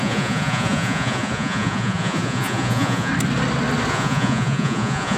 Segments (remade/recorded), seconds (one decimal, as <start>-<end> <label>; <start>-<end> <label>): 0.0-3.1 remade; 3.1-3.9 recorded; 3.9-5.2 remade